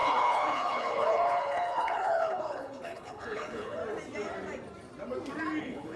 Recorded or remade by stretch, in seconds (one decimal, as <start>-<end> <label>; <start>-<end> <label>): 0.0-3.8 remade; 3.8-5.6 recorded; 5.6-6.0 remade

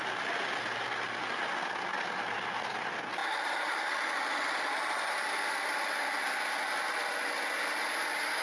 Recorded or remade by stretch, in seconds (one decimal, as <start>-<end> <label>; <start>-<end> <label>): 0.0-8.4 recorded

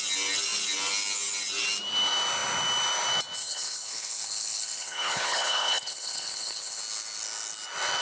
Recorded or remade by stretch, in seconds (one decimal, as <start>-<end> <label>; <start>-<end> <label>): 0.0-3.4 recorded; 3.4-6.8 remade; 6.8-8.0 recorded